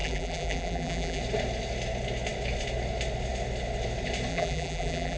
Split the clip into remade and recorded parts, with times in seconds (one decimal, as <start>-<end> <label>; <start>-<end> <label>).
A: 0.0-1.2 remade; 1.2-4.3 recorded; 4.3-5.2 remade